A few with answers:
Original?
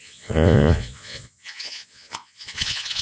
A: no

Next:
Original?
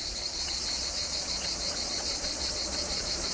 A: no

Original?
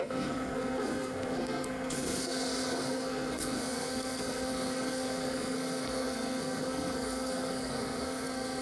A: no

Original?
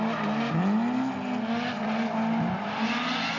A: yes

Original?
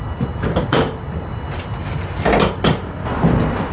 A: yes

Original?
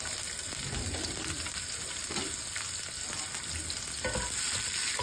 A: yes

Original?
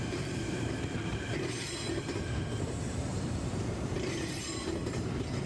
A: no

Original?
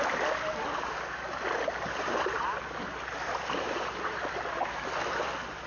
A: yes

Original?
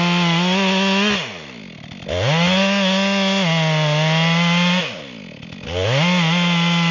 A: yes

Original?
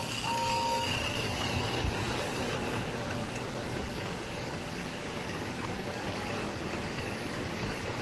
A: no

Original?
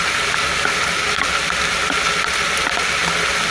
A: yes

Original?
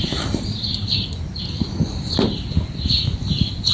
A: yes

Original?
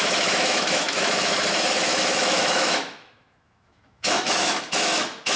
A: no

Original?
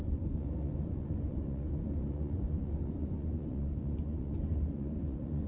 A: no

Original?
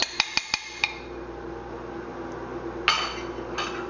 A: yes